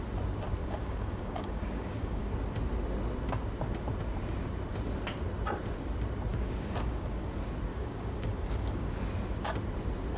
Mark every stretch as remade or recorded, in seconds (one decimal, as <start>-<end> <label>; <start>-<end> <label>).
0.0-0.6 recorded; 0.6-2.3 remade; 2.3-6.3 recorded; 6.3-7.3 remade; 7.3-7.7 recorded; 7.7-9.0 remade; 9.0-10.2 recorded